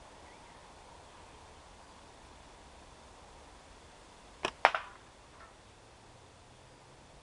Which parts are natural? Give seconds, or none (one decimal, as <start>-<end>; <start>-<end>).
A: 0.0-7.2